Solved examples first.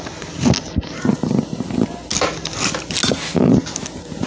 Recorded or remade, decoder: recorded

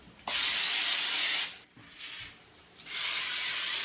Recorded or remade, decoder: remade, vocoder, BigVGAN v2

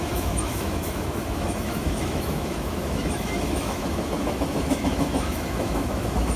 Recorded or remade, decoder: remade, autoencoder, DAC-VAE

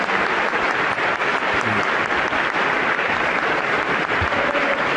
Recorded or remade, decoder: recorded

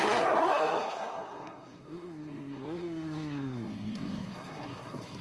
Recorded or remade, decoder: remade, codec, SNAC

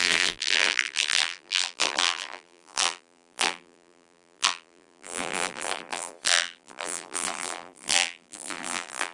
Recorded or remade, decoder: remade, vocoder, BigVGAN v2